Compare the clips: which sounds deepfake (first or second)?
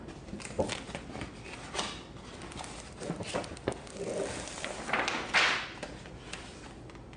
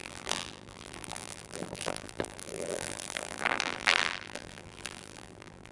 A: second